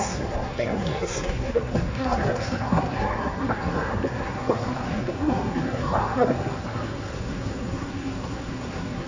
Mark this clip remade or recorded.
remade